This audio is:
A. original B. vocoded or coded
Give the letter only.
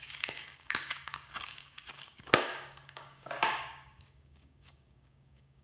B